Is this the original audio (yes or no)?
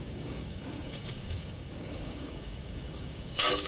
no